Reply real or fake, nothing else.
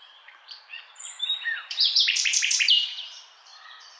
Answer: fake